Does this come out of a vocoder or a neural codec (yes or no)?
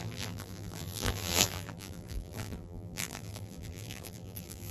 yes